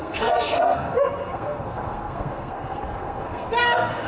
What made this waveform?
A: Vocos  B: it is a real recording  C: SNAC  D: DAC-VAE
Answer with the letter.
C